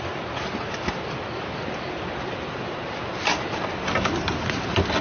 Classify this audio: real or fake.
real